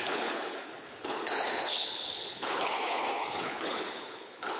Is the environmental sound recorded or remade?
remade